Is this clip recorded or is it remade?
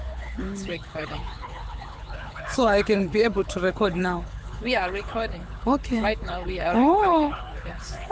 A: remade